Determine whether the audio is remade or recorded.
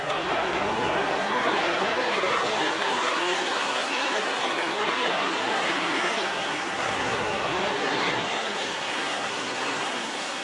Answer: remade